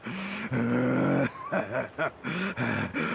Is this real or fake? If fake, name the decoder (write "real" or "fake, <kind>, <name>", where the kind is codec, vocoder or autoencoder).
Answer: real